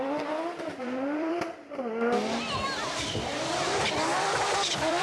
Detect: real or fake fake